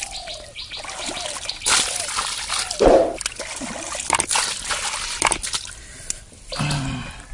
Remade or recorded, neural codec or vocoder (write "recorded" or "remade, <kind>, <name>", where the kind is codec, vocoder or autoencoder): recorded